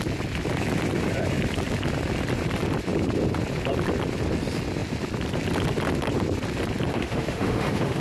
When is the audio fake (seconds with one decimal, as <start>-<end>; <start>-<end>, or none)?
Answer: 6.9-8.0